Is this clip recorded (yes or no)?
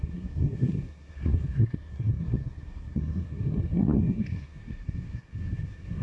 no